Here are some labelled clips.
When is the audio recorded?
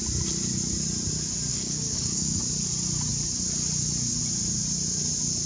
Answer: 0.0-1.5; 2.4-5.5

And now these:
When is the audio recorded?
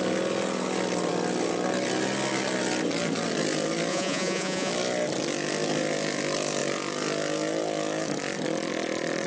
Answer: 0.0-3.9; 4.7-9.3